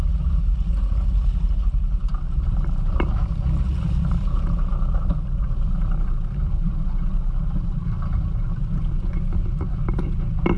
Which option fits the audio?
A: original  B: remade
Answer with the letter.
A